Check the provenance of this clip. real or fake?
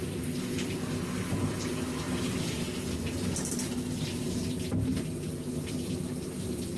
real